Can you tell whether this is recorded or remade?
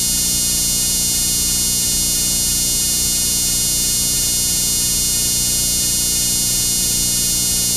recorded